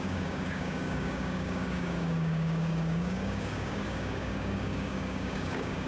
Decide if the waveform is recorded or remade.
remade